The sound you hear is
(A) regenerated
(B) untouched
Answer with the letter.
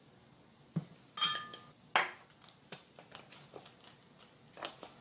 B